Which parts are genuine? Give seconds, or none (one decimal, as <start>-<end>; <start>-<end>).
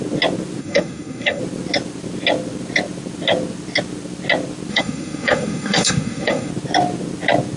0.0-0.6; 1.4-4.7; 6.5-7.6